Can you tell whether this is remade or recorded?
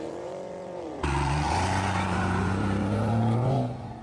remade